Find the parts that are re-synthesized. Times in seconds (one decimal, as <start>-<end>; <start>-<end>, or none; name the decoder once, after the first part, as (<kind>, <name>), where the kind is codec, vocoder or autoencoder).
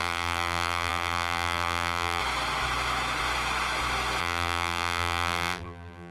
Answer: 0.0-2.2 (vocoder, BigVGAN v2); 4.2-6.1